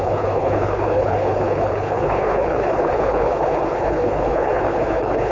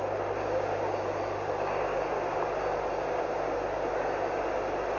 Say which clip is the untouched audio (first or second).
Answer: second